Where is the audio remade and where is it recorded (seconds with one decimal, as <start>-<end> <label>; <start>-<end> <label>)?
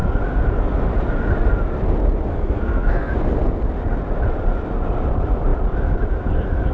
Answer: 0.0-2.3 recorded; 2.3-3.1 remade; 3.1-6.7 recorded